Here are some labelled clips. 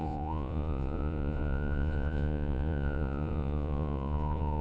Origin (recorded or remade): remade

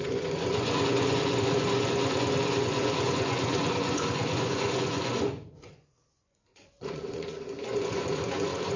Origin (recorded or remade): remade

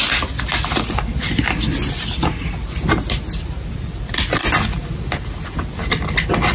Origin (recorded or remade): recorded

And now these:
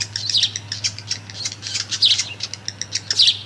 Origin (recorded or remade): recorded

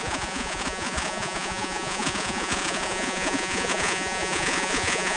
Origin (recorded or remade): remade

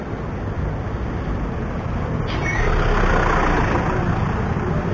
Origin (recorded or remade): recorded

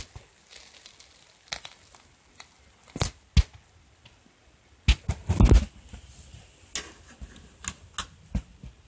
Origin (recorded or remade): recorded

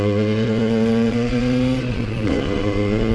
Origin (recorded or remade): remade